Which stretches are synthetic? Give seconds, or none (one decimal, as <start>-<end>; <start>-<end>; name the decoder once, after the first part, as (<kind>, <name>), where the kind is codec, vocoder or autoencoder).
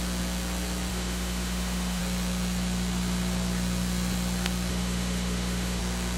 0.9-2.0 (autoencoder, DAC-VAE); 4.7-5.8